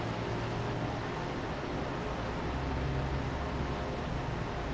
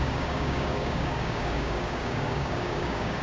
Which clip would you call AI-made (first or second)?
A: second